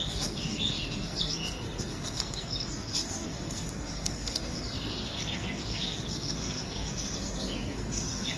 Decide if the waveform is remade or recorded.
remade